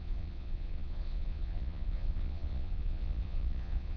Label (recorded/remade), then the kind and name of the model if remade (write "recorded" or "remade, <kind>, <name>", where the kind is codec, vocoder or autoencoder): remade, vocoder, Vocos